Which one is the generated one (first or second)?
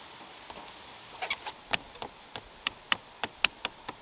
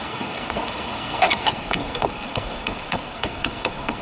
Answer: second